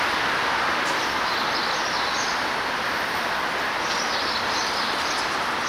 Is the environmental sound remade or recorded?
recorded